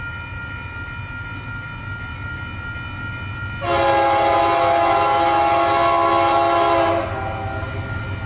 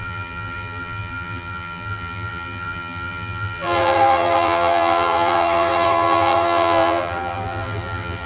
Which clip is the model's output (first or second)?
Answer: second